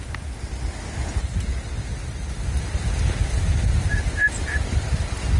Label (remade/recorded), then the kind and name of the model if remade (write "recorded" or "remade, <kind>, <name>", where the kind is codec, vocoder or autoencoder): recorded